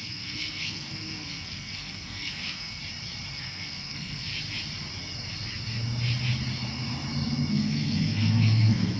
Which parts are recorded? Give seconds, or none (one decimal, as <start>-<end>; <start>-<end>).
2.8-3.3; 4.3-7.5